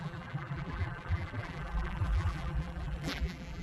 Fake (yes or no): yes